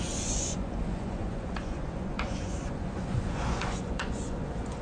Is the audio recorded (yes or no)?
no